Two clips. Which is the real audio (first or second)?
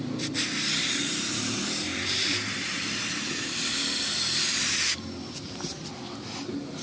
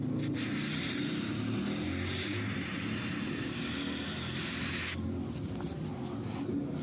second